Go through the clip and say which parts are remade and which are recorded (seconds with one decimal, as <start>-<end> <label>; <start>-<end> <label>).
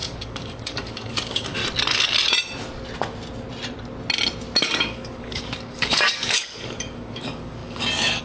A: 0.0-1.6 remade; 1.6-4.6 recorded; 4.6-8.2 remade